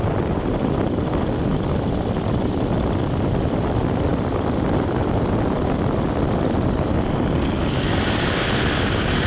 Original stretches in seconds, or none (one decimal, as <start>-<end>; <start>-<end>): none